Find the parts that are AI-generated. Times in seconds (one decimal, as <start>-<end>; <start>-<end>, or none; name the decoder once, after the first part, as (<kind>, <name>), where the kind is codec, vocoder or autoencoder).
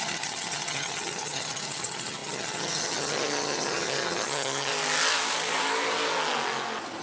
0.0-4.7 (vocoder, HiFi-GAN)